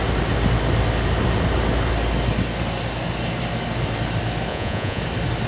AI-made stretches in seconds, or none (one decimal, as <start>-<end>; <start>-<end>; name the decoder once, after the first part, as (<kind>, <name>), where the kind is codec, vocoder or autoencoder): 4.5-5.0 (vocoder, Vocos)